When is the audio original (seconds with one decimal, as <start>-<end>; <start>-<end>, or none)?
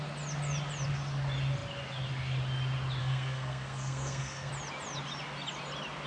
0.0-3.0; 4.5-6.1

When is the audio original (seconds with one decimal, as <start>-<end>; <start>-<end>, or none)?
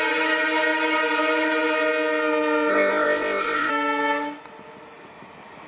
0.0-2.7; 3.7-5.7